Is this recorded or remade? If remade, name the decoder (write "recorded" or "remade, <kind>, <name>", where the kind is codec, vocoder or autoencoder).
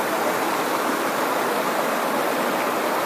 recorded